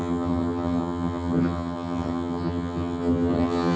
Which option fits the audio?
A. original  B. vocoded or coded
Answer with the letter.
B